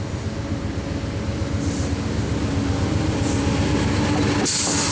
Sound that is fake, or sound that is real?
real